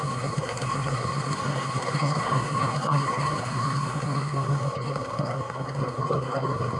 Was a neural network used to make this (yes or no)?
yes